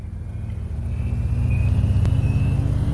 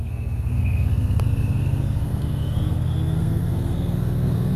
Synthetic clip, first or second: second